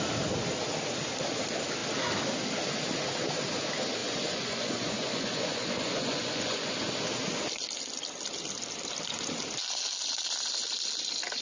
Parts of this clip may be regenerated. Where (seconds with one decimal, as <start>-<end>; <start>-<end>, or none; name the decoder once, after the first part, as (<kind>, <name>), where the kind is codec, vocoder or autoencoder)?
4.0-6.9 (vocoder, Vocos)